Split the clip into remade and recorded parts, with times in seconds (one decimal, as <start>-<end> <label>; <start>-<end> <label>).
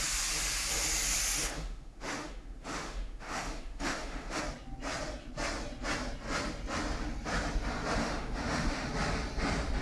0.0-1.4 recorded; 1.4-4.4 remade; 4.4-8.0 recorded; 8.0-8.9 remade; 8.9-9.8 recorded